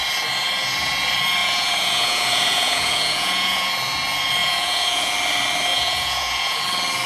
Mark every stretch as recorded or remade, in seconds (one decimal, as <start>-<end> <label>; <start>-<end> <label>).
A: 0.0-1.4 recorded; 1.4-3.7 remade; 3.7-4.4 recorded; 4.4-5.1 remade; 5.1-5.7 recorded; 5.7-6.6 remade; 6.6-7.1 recorded